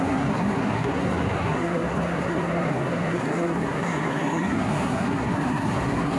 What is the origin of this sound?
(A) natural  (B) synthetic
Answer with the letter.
B